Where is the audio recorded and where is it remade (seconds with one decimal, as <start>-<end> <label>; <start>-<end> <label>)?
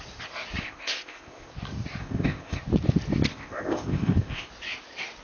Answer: 0.0-0.6 recorded; 0.6-1.5 remade; 1.5-2.0 recorded; 2.0-2.6 remade; 2.6-3.3 recorded; 3.3-4.5 remade; 4.5-5.2 recorded